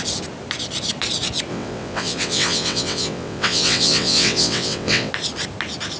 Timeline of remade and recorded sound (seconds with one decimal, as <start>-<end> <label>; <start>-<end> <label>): 0.0-1.5 recorded; 1.5-5.1 remade; 5.1-6.0 recorded